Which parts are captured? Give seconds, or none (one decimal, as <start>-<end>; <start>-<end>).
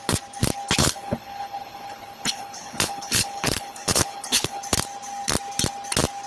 0.0-0.8; 4.6-6.3